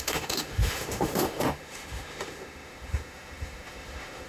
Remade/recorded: remade